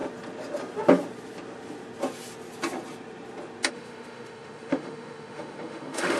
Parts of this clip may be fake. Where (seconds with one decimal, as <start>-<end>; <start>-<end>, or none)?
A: 3.7-6.2